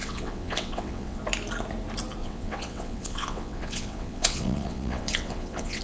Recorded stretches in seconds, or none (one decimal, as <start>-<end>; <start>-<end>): 1.2-2.2